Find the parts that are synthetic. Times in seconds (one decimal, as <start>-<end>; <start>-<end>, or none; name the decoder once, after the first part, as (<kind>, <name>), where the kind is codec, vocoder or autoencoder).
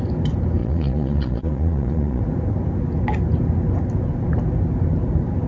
0.6-2.2 (vocoder, Vocos)